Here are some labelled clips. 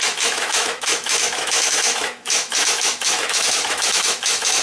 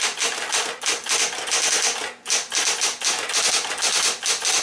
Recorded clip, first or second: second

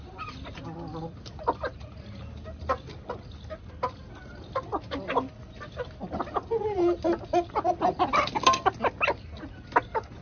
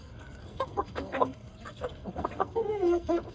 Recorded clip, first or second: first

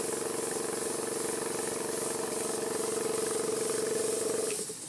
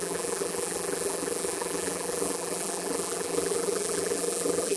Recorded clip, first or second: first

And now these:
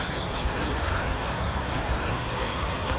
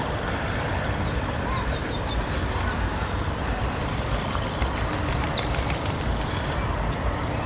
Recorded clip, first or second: second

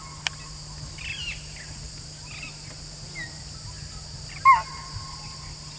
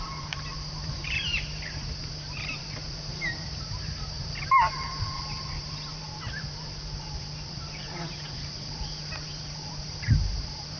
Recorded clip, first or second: first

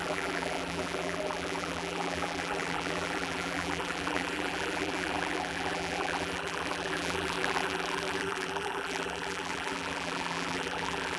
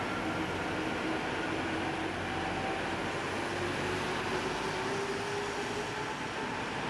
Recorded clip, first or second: second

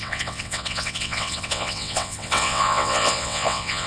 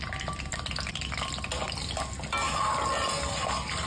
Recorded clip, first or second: second